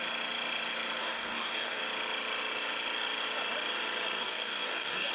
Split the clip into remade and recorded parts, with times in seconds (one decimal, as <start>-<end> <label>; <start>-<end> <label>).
0.0-1.0 recorded; 1.0-1.8 remade; 1.8-4.2 recorded; 4.2-5.1 remade